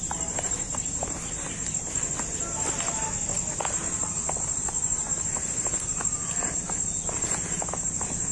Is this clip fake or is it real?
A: real